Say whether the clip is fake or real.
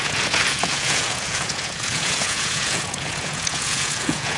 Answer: fake